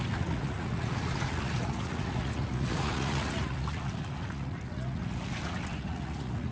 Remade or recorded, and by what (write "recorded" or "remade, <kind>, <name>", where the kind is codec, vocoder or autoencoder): remade, vocoder, Vocos